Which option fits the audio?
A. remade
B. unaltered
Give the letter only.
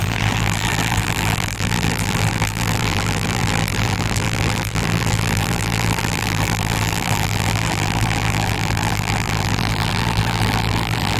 A